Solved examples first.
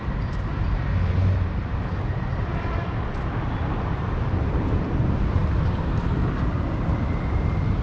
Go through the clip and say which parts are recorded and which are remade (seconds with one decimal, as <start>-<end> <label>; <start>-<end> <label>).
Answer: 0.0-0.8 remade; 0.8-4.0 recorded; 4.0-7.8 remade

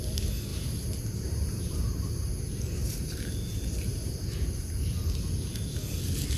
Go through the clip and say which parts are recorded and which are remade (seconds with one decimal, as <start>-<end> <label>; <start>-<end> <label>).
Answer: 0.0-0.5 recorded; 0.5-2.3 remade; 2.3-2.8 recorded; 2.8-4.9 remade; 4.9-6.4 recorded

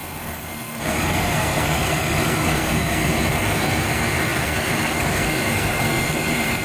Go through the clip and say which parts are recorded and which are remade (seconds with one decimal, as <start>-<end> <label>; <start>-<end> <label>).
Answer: 0.0-6.6 remade